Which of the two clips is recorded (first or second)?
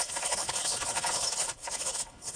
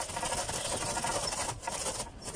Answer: second